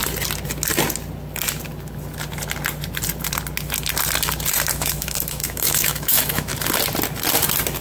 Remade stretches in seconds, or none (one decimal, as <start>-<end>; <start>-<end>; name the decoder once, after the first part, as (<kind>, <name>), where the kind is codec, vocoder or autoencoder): 4.7-6.5 (autoencoder, DAC-VAE)

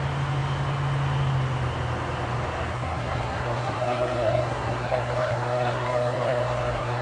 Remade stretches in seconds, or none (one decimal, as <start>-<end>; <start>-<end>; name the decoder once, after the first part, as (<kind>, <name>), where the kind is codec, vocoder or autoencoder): 2.7-7.0 (codec, SNAC)